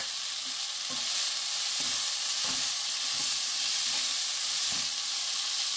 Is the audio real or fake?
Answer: real